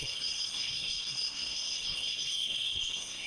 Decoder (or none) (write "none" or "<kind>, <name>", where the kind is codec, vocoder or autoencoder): codec, SNAC